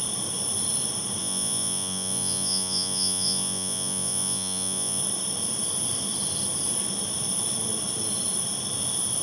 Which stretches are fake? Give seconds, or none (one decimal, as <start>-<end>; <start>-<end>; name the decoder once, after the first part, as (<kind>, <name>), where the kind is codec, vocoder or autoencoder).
1.2-5.0 (vocoder, Vocos)